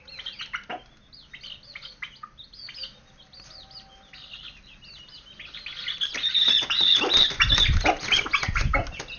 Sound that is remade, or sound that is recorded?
recorded